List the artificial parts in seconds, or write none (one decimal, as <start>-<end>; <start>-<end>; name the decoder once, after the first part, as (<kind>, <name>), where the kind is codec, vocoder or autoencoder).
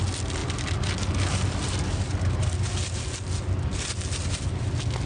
none